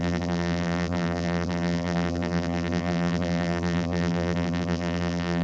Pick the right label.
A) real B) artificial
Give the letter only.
B